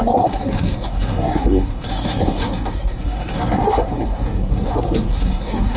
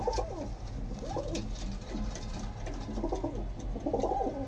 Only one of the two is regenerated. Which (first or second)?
first